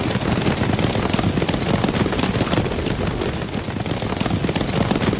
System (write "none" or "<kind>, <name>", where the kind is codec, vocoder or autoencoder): none